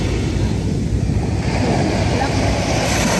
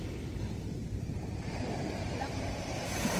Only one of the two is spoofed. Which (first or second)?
second